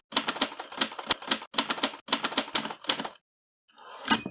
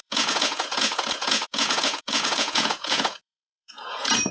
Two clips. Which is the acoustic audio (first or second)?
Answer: first